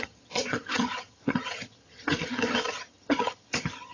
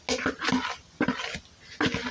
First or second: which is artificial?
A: first